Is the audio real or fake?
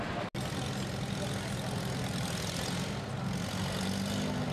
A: real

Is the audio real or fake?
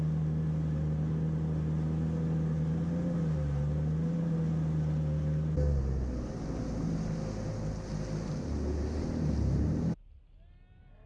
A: real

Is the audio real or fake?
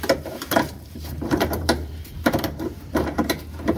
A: fake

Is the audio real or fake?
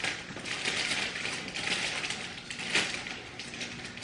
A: fake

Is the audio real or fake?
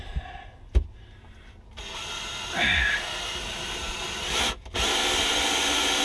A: real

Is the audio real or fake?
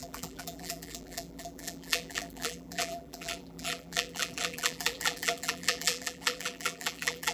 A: fake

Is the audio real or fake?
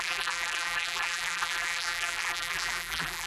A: fake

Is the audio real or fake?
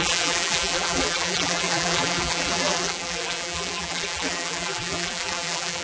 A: fake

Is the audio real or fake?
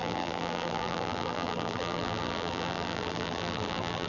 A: fake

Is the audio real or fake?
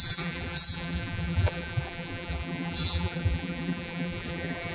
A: fake